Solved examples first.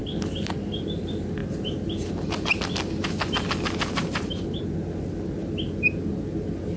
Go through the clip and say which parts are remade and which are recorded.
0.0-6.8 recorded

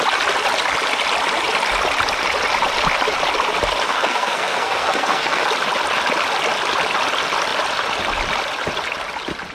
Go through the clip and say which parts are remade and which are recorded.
0.0-3.8 recorded; 3.8-5.5 remade; 5.5-9.5 recorded

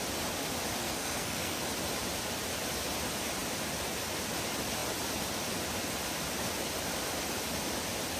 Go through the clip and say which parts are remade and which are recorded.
0.0-0.8 recorded; 0.8-1.6 remade; 1.6-8.2 recorded